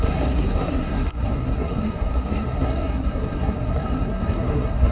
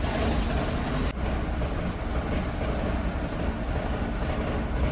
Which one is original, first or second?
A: second